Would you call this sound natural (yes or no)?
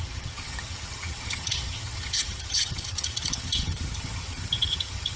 no